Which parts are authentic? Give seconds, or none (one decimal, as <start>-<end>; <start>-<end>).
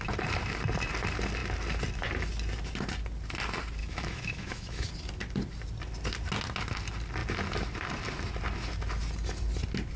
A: 0.0-3.8; 4.9-10.0